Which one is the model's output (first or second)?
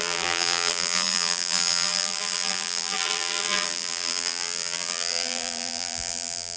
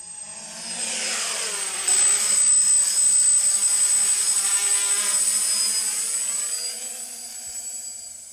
first